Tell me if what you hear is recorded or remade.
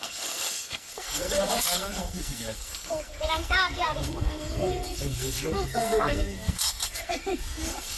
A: remade